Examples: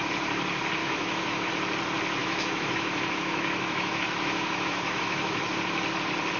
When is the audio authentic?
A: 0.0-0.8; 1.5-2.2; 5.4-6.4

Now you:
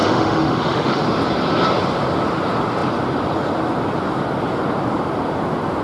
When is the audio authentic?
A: 1.0-5.8

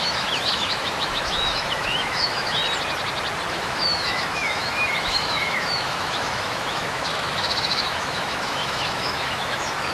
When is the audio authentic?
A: 2.6-3.5

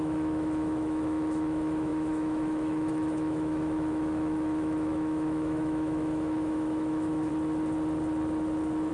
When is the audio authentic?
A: 7.3-8.9

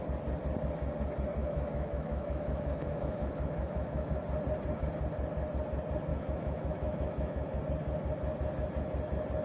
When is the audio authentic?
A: 0.0-1.4; 4.1-6.1; 7.6-9.4

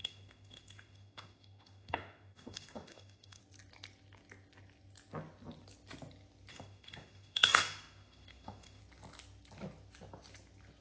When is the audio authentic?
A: 3.4-6.5; 8.8-10.8